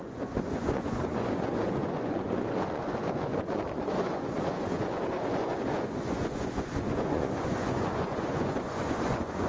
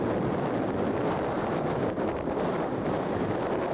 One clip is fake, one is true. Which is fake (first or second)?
first